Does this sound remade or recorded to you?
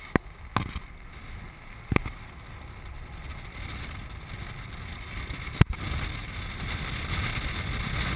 recorded